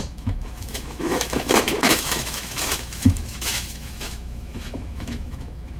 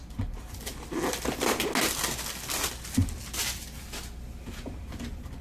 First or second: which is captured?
second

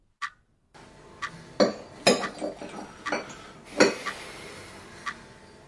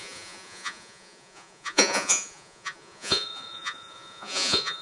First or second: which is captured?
first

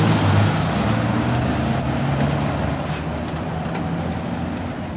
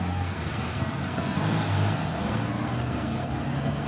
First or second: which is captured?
first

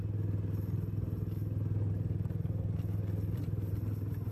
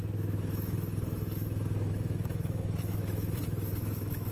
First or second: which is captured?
first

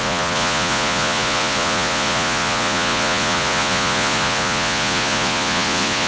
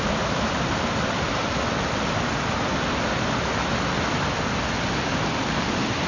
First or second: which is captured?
second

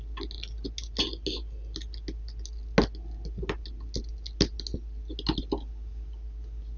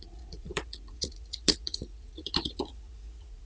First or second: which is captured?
first